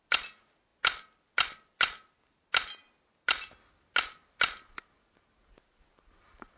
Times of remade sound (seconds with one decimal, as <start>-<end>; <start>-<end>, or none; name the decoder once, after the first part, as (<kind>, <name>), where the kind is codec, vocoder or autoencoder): none